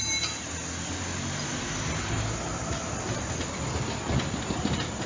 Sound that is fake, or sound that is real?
real